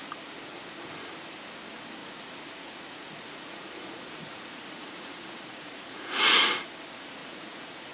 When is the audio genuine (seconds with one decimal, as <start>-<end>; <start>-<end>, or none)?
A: 0.0-2.0; 6.7-7.2